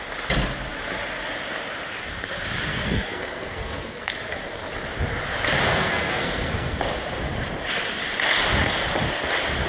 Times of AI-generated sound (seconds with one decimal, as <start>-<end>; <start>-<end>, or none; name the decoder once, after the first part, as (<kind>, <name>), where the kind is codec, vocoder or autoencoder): 2.7-4.1 (codec, SNAC); 5.7-6.8